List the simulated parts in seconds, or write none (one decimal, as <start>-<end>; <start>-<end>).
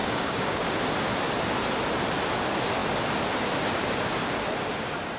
0.0-0.7